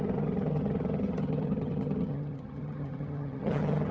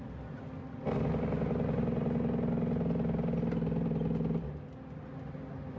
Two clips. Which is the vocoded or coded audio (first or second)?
first